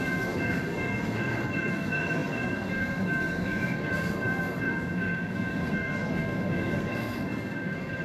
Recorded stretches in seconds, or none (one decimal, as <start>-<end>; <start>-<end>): none

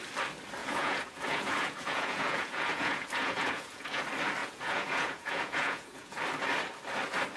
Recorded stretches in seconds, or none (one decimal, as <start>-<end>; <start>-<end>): 0.0-0.6; 4.0-4.4; 6.2-7.4

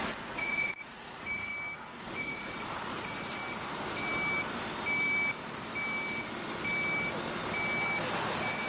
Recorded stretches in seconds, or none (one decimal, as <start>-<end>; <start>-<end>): 1.5-2.0; 3.4-8.7

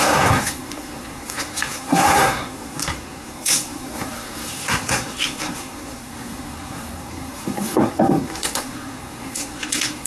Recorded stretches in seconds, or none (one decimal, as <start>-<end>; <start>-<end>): none

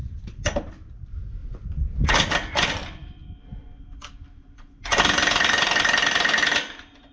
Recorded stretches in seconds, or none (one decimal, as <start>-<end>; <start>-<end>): 0.7-7.1

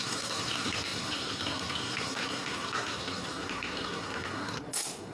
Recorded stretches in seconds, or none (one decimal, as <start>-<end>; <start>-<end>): none

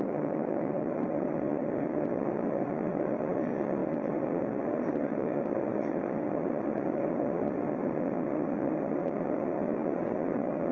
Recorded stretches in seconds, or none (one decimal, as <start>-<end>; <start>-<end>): none